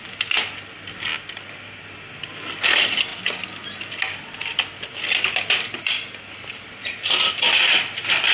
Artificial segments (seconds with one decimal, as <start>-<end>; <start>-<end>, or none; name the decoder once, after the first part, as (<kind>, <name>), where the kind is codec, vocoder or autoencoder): none